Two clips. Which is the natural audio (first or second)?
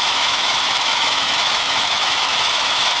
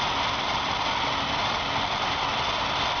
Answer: second